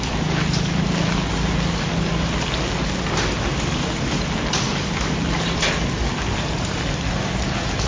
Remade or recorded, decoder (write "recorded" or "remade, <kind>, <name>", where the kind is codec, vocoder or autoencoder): recorded